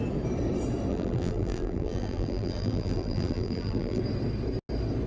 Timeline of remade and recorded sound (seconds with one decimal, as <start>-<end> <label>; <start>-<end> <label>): 0.0-0.9 recorded; 0.9-4.0 remade; 4.0-5.1 recorded